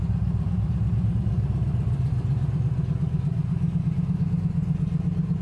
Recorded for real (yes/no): no